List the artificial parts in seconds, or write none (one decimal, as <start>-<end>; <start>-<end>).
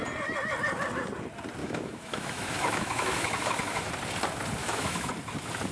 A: 1.6-3.9; 4.6-5.1